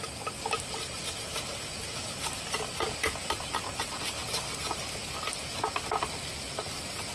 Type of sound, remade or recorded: recorded